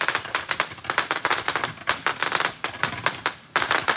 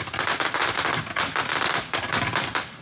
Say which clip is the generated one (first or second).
first